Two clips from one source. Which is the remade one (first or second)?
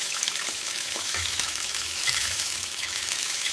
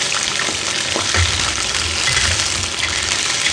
first